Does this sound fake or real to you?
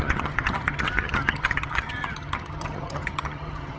fake